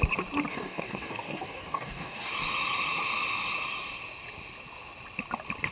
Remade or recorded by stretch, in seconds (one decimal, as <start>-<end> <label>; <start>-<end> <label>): 0.0-0.5 recorded; 0.5-2.3 remade; 2.3-5.7 recorded